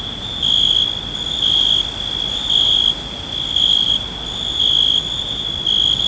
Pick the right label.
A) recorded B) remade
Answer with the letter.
A